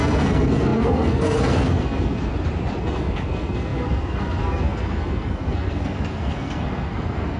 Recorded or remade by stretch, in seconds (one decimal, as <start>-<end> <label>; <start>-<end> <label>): 0.0-2.3 remade; 2.3-2.8 recorded; 2.8-7.4 remade